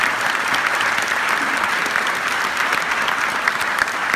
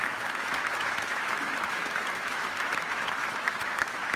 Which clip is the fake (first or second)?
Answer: second